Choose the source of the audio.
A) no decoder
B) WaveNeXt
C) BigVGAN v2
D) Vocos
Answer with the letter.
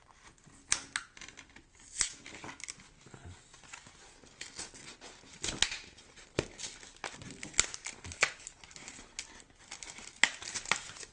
A